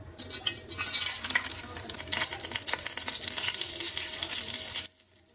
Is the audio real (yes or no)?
yes